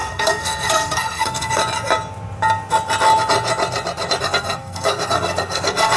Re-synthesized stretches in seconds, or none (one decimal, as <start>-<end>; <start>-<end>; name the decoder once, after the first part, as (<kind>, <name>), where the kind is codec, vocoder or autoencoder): 0.0-1.6 (codec, SNAC); 4.2-6.0